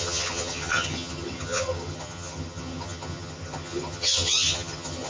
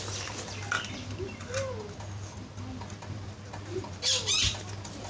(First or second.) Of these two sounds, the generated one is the first